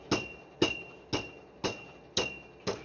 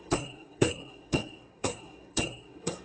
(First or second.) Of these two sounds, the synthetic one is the second